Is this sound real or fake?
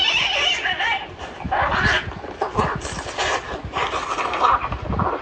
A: real